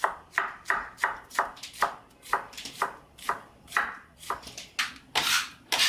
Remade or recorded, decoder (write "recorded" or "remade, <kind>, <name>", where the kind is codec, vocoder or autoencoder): recorded